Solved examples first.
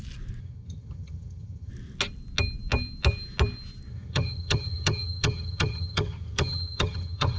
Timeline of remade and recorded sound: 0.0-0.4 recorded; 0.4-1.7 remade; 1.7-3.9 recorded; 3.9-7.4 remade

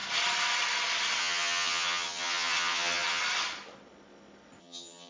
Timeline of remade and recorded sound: 0.0-1.2 recorded; 1.2-3.2 remade; 3.2-4.6 recorded; 4.6-5.1 remade

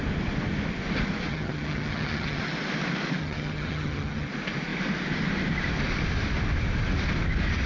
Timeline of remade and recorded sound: 0.0-1.3 recorded; 1.3-2.4 remade; 2.4-3.2 recorded; 3.2-4.3 remade; 4.3-7.7 recorded

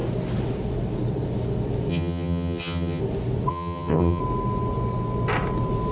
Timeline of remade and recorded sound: 0.0-1.9 recorded; 1.9-3.0 remade; 3.0-3.5 recorded; 3.5-4.2 remade; 4.2-5.9 recorded

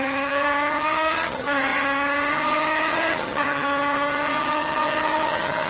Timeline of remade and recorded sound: 0.0-5.7 remade

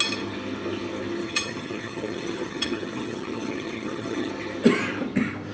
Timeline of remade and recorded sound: 0.0-1.2 recorded; 1.2-4.3 remade; 4.3-5.5 recorded